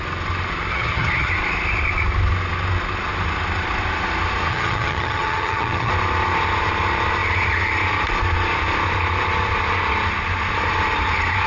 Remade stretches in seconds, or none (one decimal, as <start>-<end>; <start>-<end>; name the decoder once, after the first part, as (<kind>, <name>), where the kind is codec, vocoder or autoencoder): 0.7-1.3 (vocoder, HiFi-GAN); 4.5-5.9